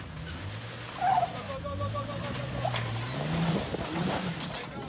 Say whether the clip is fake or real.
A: real